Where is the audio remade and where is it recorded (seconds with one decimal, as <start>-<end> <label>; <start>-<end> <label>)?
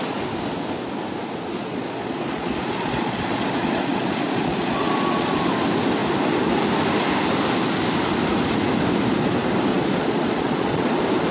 0.0-1.6 recorded; 1.6-5.3 remade; 5.3-9.7 recorded; 9.7-10.9 remade; 10.9-11.3 recorded